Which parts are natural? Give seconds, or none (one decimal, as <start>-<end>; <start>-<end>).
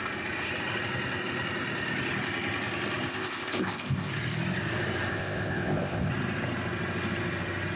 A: 0.0-3.1; 4.1-5.1; 6.1-7.8